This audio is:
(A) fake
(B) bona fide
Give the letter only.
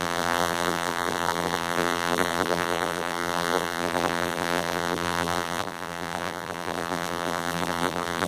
A